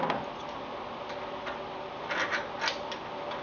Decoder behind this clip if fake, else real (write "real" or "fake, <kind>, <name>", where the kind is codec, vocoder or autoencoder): real